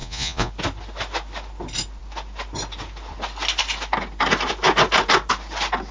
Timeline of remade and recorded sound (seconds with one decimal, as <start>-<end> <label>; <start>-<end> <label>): 0.0-0.5 remade; 0.5-5.9 recorded